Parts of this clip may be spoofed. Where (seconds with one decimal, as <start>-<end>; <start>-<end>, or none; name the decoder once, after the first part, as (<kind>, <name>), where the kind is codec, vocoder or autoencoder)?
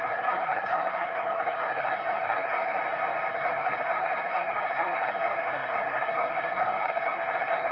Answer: 0.0-2.8 (codec, SNAC); 3.3-7.7